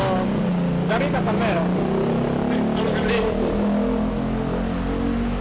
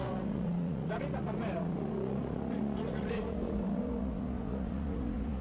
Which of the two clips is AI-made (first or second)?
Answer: second